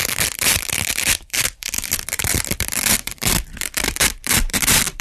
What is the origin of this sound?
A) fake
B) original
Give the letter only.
A